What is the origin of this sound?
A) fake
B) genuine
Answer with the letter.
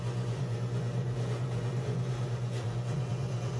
A